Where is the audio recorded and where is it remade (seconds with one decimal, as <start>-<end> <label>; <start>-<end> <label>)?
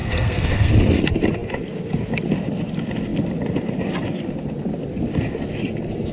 0.0-0.7 remade; 0.7-6.1 recorded